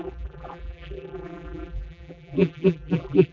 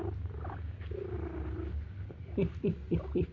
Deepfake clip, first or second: first